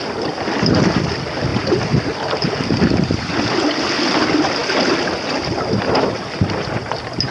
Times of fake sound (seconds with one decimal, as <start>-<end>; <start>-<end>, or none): none